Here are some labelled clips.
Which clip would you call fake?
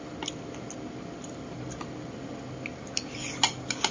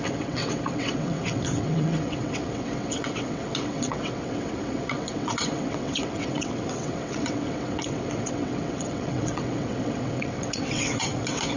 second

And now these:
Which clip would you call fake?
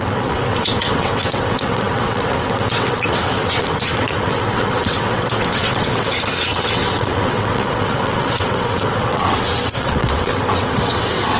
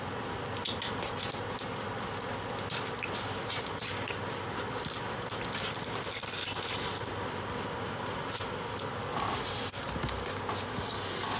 first